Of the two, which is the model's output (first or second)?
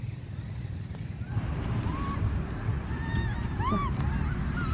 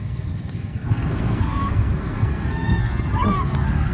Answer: second